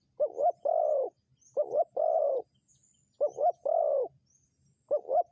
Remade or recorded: recorded